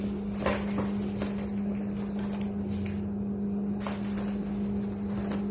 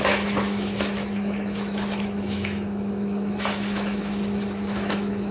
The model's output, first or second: second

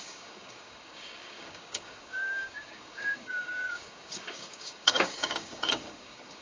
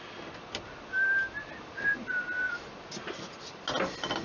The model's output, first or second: first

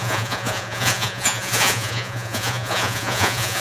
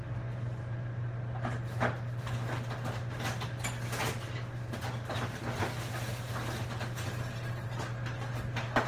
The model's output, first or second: first